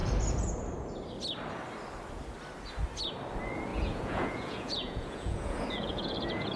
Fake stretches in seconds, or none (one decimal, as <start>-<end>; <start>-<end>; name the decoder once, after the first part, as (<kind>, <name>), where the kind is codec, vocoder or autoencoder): 3.7-6.6 (vocoder, Vocos)